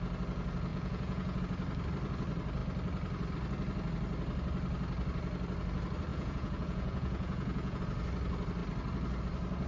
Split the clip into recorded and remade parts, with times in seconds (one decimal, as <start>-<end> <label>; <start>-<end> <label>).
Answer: 0.0-0.7 recorded; 0.7-1.4 remade; 1.4-6.1 recorded; 6.1-7.8 remade; 7.8-9.7 recorded